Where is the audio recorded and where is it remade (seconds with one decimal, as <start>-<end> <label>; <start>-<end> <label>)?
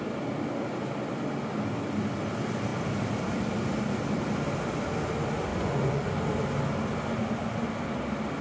0.0-5.5 recorded; 5.5-6.1 remade; 6.1-8.4 recorded